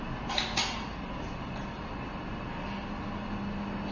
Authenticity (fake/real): real